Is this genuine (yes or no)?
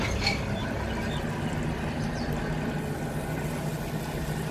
yes